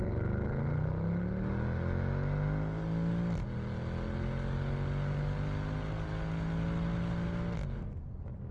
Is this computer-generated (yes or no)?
no